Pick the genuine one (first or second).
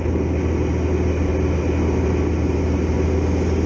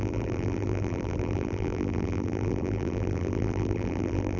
first